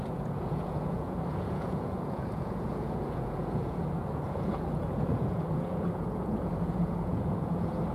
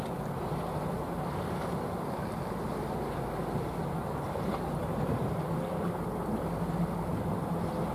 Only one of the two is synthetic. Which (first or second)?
first